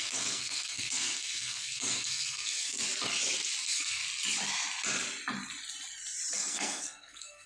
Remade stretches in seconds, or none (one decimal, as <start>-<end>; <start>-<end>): 0.0-2.8; 3.6-4.0; 6.3-7.5